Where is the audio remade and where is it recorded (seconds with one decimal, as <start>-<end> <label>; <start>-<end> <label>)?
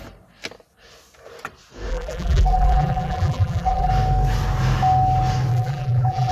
0.0-1.9 recorded; 1.9-3.9 remade; 3.9-5.5 recorded; 5.5-6.3 remade